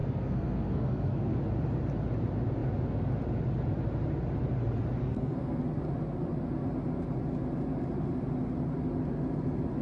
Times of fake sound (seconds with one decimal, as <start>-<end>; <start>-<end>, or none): 0.0-1.4; 5.0-5.6